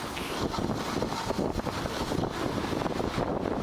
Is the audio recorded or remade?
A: recorded